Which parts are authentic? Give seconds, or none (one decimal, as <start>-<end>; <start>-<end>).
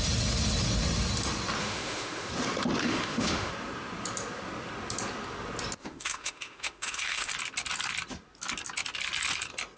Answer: 0.0-1.6; 2.3-2.8; 3.5-5.8; 7.3-9.8